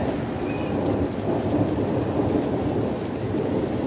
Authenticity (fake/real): real